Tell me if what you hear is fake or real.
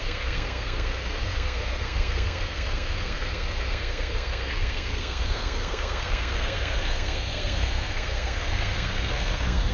fake